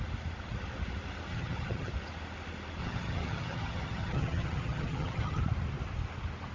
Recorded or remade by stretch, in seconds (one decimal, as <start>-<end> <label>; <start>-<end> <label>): 0.0-1.3 recorded; 1.3-1.9 remade; 1.9-2.8 recorded; 2.8-5.4 remade; 5.4-6.5 recorded